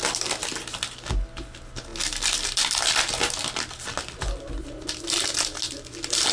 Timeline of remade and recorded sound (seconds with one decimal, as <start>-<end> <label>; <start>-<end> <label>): 0.0-6.3 recorded